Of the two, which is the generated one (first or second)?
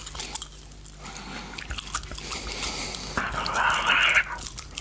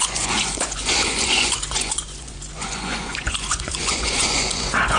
second